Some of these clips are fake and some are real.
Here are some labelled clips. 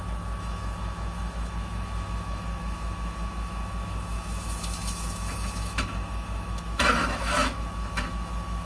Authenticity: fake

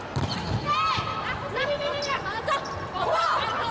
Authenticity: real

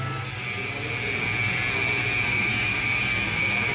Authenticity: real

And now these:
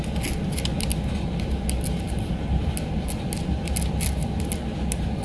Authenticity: real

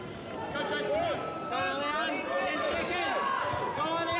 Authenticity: real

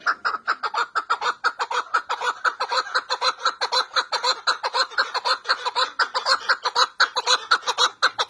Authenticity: real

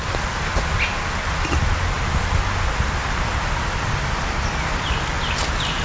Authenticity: real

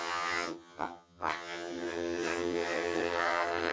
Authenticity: fake